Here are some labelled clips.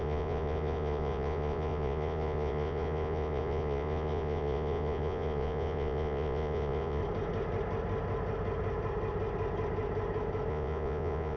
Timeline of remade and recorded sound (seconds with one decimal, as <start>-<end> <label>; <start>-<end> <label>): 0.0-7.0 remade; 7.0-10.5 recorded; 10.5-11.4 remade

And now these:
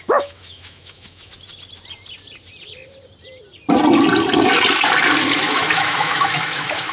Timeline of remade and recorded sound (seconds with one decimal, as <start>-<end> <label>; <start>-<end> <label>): 0.0-1.3 remade; 1.3-5.4 recorded; 5.4-6.9 remade

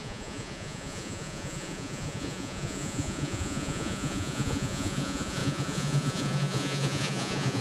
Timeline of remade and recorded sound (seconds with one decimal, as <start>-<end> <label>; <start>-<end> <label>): 0.0-7.6 remade

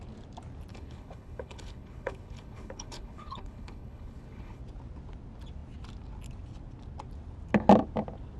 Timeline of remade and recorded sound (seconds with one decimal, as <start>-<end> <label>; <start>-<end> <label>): 0.0-0.7 recorded; 0.7-4.6 remade; 4.6-8.4 recorded